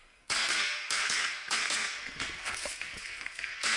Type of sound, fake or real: fake